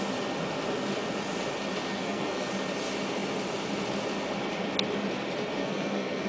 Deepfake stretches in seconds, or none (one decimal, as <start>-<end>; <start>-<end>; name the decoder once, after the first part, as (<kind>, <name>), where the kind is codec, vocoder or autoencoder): 1.9-2.5 (codec, SNAC); 5.6-6.3